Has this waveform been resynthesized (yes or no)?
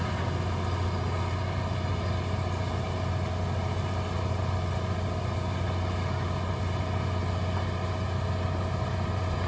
no